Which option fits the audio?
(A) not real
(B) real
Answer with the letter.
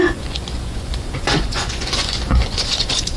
A